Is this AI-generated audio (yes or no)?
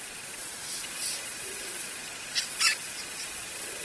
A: yes